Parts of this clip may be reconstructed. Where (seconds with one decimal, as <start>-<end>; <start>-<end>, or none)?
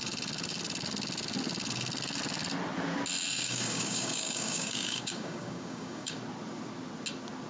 3.3-6.2